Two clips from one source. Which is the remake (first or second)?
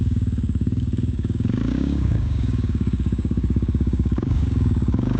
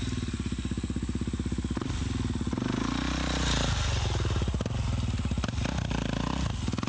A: first